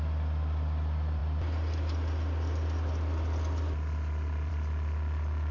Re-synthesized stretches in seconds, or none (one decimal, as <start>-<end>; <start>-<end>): none